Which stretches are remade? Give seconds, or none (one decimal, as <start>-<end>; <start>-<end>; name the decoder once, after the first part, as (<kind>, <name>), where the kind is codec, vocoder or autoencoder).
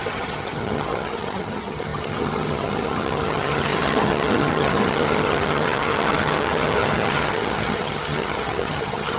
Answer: 0.0-9.2 (vocoder, HiFi-GAN)